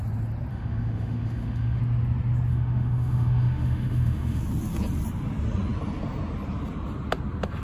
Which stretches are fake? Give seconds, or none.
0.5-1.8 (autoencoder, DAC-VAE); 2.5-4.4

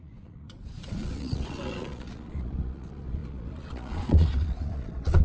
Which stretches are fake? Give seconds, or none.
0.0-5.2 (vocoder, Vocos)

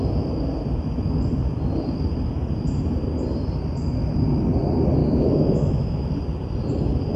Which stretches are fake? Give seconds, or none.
5.0-6.1 (autoencoder, DAC-VAE)

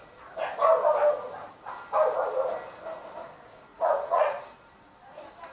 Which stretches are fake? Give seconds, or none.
3.7-4.4 (vocoder, Vocos)

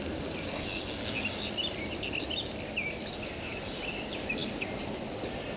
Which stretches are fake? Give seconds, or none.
none

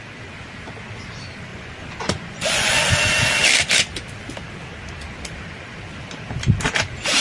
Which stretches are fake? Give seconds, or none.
1.5-2.9 (vocoder, Vocos)

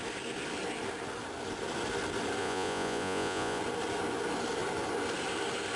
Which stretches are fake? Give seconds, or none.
2.4-3.6 (vocoder, Vocos)